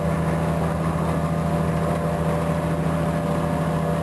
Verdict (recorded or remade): recorded